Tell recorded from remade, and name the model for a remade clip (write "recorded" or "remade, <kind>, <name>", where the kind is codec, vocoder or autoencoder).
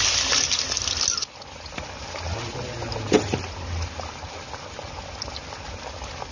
recorded